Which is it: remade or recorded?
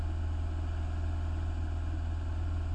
recorded